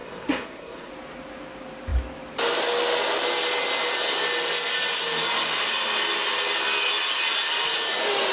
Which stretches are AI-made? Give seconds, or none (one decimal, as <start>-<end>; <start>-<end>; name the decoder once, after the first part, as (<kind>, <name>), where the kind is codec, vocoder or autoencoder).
0.0-0.9 (codec, SNAC)